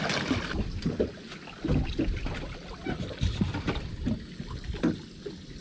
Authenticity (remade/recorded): recorded